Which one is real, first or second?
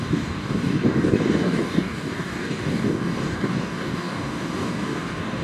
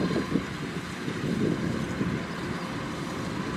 second